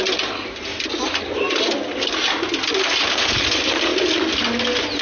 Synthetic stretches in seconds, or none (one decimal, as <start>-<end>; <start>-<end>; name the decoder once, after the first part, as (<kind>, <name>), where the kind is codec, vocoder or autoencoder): none